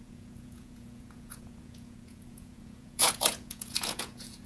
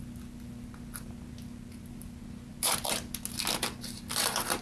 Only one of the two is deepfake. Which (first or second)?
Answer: first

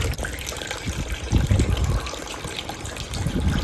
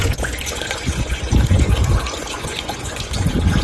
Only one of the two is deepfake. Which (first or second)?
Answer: second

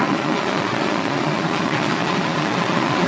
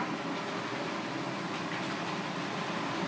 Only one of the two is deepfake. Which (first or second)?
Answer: first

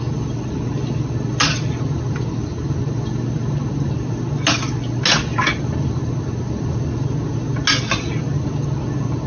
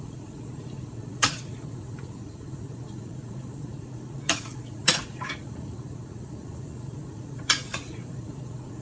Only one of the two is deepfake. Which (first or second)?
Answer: second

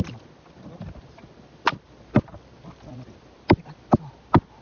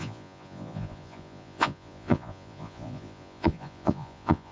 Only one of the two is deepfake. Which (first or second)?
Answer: second